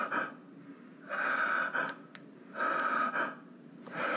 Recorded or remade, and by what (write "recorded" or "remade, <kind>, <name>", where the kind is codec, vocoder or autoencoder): recorded